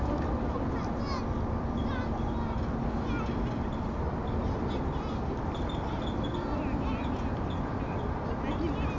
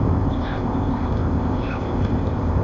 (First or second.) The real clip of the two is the first